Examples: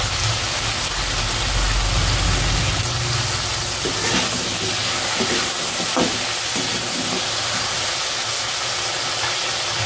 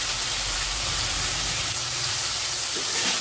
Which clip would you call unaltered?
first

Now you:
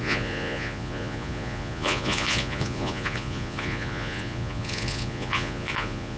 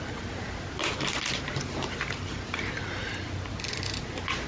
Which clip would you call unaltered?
second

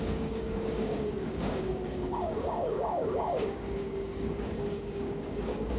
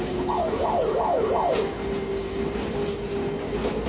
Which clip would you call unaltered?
second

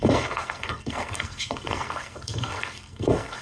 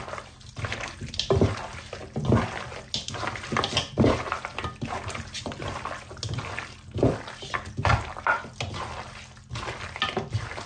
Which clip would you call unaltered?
second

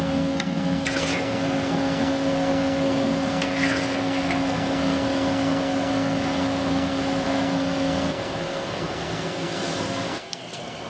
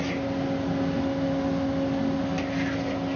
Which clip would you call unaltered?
second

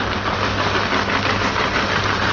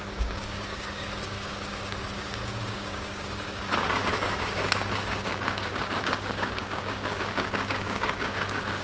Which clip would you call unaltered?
first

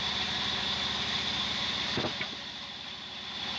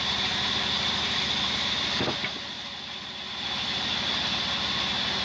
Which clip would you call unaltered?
second